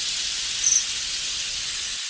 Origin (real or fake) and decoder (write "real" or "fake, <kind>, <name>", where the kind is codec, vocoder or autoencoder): real